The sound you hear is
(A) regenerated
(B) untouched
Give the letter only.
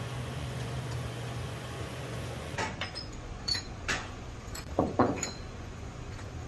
A